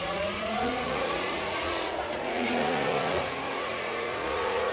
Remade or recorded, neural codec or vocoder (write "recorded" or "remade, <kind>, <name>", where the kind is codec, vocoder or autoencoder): remade, vocoder, Vocos